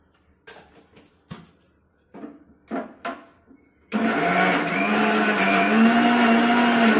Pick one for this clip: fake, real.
real